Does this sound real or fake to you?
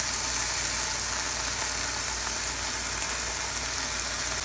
real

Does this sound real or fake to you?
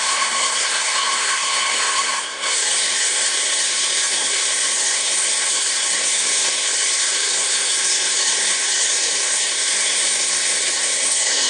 fake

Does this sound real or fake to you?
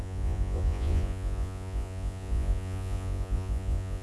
fake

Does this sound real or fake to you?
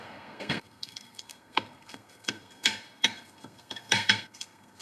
fake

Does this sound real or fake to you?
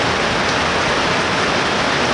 real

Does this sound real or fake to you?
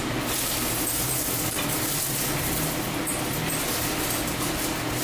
real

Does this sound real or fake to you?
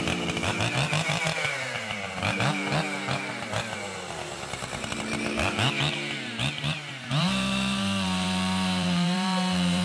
fake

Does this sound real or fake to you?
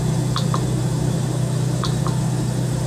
fake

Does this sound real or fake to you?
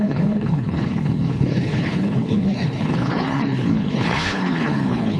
fake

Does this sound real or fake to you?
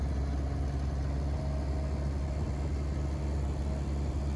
real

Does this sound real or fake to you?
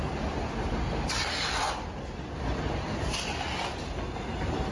real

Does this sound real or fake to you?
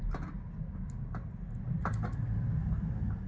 real